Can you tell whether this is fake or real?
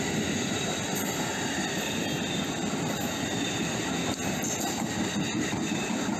real